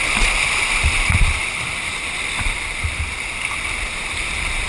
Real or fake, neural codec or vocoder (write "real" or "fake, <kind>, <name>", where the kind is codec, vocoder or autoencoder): real